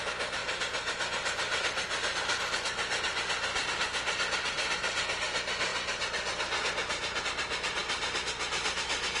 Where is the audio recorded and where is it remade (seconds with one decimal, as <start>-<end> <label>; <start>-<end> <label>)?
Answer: 0.0-9.2 recorded